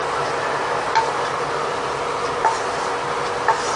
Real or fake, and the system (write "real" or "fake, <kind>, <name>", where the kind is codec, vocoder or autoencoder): real